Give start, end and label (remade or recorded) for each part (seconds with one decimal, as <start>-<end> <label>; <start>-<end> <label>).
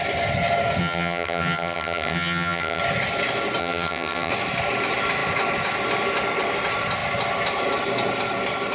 0.0-0.8 recorded; 0.8-2.8 remade; 2.8-3.6 recorded; 3.6-4.3 remade; 4.3-8.7 recorded